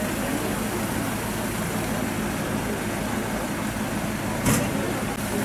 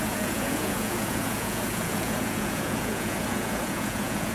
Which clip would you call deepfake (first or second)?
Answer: second